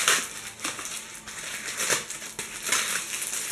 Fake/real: real